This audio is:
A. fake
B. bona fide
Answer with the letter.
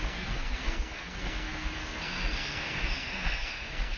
A